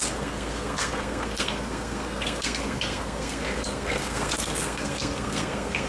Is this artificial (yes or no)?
yes